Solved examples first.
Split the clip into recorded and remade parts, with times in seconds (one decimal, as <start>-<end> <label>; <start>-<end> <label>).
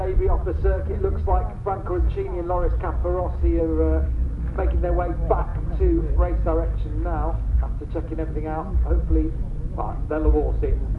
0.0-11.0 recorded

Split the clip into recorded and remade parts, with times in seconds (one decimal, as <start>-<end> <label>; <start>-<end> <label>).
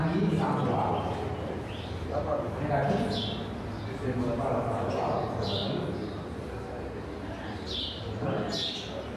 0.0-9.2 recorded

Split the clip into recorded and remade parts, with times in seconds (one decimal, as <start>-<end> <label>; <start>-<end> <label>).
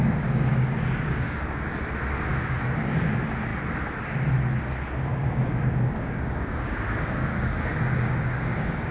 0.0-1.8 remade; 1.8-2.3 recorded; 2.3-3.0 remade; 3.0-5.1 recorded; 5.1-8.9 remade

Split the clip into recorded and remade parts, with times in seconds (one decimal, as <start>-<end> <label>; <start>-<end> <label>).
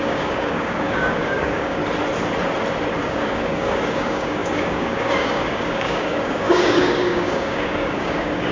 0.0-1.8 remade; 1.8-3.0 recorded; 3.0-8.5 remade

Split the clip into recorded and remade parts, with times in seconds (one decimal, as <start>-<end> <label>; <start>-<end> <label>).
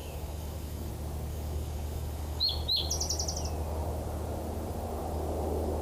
0.0-0.9 remade; 0.9-1.3 recorded; 1.3-2.5 remade; 2.5-5.8 recorded